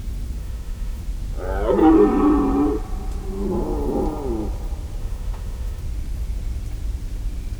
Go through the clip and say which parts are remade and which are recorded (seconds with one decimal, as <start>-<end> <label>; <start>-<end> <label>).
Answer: 0.0-0.4 recorded; 0.4-1.0 remade; 1.0-5.0 recorded; 5.0-5.8 remade; 5.8-7.6 recorded